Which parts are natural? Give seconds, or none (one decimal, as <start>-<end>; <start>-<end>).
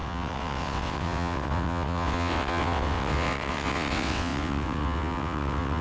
none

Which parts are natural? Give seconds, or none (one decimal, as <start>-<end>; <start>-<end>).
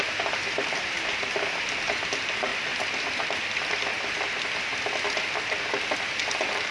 2.5-6.3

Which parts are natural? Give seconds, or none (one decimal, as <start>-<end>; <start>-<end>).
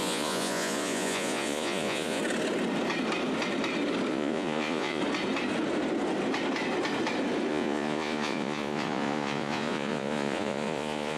2.2-4.1; 5.0-7.5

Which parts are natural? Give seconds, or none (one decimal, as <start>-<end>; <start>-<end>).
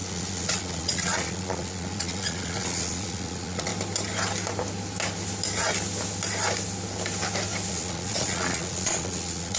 3.7-7.7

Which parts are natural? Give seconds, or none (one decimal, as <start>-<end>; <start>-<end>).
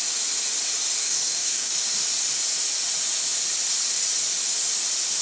0.0-1.0; 1.7-5.2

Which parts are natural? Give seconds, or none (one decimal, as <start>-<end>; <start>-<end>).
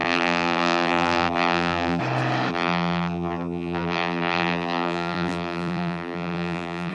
2.0-2.5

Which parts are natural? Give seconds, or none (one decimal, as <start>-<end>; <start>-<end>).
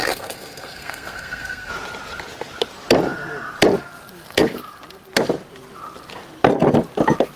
1.7-7.4